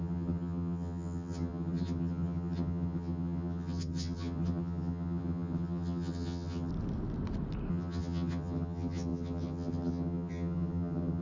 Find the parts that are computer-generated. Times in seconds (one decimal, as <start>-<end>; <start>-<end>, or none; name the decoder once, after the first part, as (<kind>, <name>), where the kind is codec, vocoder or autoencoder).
0.0-6.7 (vocoder, HiFi-GAN); 7.7-11.2